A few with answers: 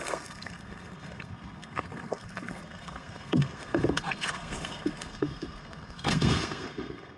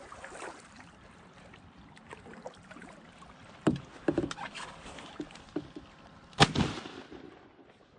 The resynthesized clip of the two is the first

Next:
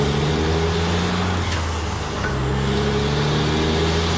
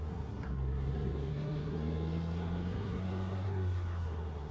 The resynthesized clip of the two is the second